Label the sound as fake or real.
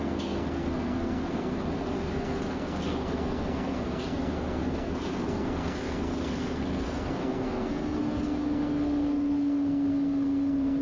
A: fake